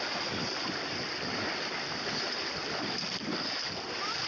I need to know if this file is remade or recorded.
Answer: recorded